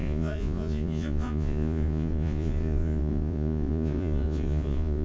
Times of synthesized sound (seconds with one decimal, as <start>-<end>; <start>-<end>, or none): 0.0-5.0